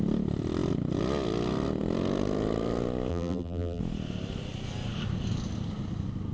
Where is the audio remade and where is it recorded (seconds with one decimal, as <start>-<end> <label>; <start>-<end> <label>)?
0.0-3.1 recorded; 3.1-3.8 remade; 3.8-6.3 recorded